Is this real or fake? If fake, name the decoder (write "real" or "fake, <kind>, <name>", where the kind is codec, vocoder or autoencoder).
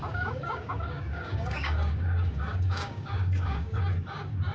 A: fake, codec, DAC